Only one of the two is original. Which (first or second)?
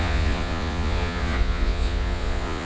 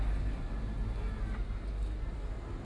second